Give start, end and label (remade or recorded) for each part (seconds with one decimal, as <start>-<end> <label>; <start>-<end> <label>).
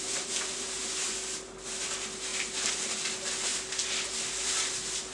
0.0-5.1 recorded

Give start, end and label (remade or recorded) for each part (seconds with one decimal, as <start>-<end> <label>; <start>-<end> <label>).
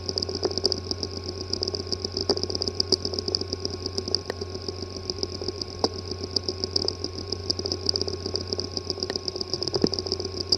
0.0-2.2 recorded; 2.2-3.7 remade; 3.7-7.4 recorded; 7.4-10.6 remade